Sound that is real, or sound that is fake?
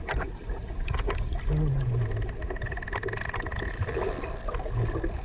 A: real